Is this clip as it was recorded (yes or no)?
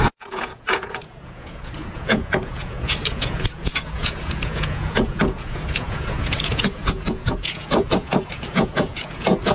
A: no